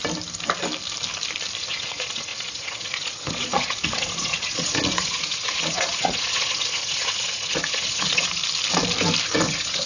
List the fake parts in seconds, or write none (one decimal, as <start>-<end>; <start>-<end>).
1.6-8.4; 9.2-9.9